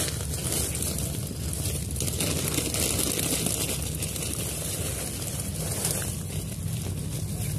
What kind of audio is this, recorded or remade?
recorded